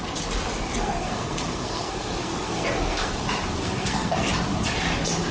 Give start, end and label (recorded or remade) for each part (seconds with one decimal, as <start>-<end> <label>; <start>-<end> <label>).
0.0-0.7 recorded; 0.7-3.1 remade; 3.1-3.6 recorded; 3.6-4.3 remade; 4.3-5.3 recorded